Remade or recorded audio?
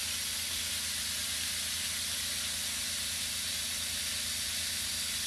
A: recorded